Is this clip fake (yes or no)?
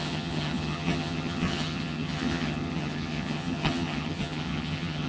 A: yes